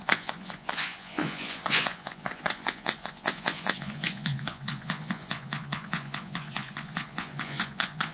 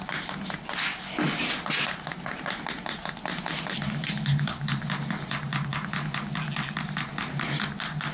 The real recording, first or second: second